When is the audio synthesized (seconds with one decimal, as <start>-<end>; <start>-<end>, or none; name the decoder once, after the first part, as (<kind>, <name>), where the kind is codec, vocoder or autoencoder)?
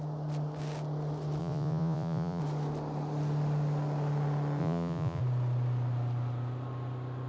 1.4-2.4 (vocoder, Vocos); 4.6-5.2